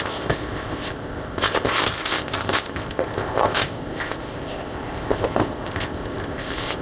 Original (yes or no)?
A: no